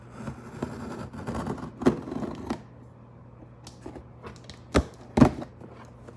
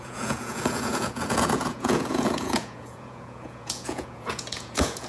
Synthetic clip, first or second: second